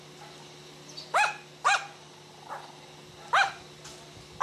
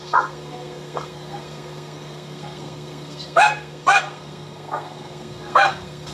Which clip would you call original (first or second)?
first